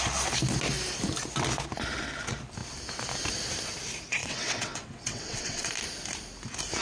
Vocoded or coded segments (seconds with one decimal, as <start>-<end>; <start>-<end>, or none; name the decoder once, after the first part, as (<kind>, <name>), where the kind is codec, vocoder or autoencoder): 4.2-5.7 (vocoder, WaveNeXt)